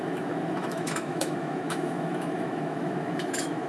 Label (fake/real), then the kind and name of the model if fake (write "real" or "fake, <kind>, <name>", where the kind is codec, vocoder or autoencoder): fake, autoencoder, DAC-VAE